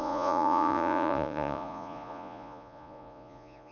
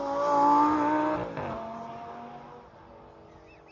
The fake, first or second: first